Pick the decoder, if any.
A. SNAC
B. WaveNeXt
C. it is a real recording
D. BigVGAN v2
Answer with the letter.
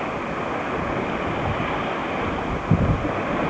C